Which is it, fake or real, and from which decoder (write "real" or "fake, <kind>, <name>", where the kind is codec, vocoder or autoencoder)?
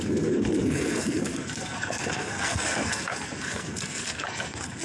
fake, codec, SNAC